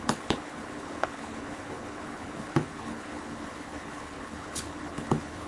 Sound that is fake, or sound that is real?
fake